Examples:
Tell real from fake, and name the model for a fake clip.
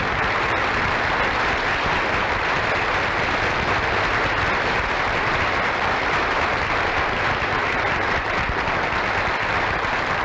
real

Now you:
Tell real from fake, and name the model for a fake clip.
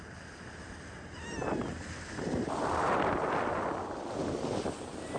real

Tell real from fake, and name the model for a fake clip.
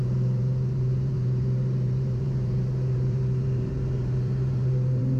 fake, vocoder, BigVGAN v2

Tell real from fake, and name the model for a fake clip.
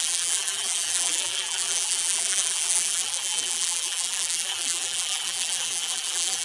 fake, vocoder, BigVGAN v2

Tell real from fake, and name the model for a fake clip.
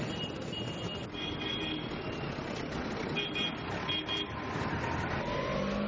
real